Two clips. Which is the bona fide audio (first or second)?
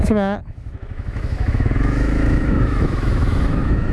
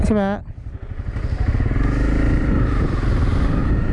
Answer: second